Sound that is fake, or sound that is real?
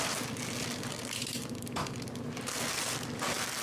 real